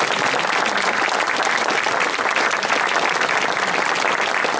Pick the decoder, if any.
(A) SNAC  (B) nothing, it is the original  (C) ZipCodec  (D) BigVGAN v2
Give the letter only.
B